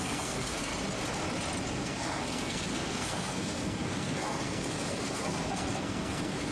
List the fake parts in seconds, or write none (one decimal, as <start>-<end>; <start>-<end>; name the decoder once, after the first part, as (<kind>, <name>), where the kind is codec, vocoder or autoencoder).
0.0-0.7 (codec, SNAC); 1.7-6.5